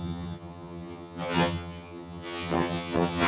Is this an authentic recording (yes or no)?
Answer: no